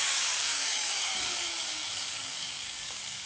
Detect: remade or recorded remade